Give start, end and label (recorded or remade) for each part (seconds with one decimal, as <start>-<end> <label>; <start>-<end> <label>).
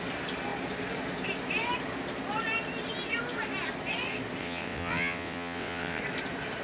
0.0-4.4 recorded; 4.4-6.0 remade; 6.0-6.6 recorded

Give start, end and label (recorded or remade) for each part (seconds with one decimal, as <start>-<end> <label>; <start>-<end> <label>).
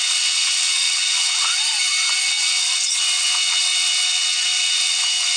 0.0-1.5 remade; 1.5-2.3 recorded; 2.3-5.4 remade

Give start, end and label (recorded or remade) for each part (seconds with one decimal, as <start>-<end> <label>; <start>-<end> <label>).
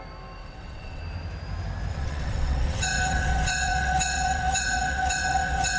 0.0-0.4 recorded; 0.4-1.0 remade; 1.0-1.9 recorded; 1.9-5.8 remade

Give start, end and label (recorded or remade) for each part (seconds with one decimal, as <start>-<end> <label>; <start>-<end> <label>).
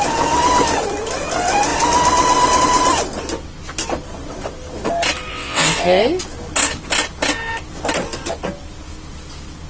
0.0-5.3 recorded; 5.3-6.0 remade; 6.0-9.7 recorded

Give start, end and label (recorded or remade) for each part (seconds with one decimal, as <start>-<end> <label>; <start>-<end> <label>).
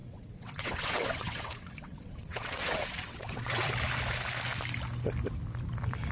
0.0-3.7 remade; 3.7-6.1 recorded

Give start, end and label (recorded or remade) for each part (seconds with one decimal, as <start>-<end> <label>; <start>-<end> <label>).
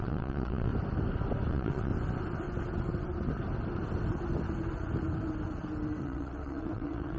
0.0-0.7 remade; 0.7-1.5 recorded; 1.5-1.9 remade; 1.9-6.0 recorded; 6.0-7.2 remade